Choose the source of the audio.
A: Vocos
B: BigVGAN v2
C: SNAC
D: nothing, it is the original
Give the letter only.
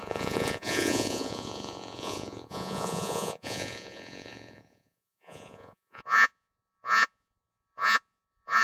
A